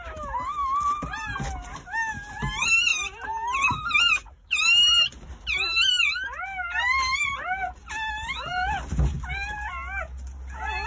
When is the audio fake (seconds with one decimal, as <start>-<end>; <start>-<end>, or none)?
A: none